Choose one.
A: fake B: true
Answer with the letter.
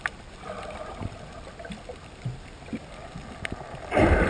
B